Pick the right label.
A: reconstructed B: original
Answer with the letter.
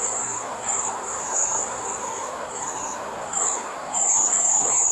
A